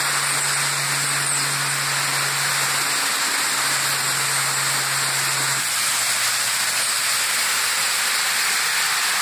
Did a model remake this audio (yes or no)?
no